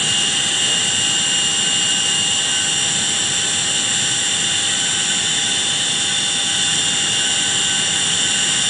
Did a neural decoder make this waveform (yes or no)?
no